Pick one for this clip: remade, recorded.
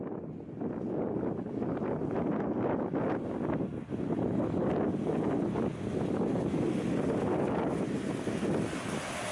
recorded